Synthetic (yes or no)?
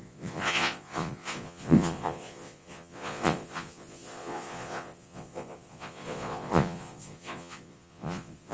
yes